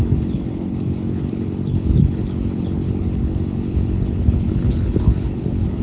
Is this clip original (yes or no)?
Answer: no